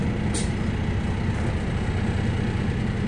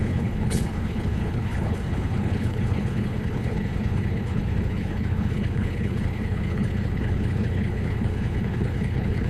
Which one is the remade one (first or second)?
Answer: second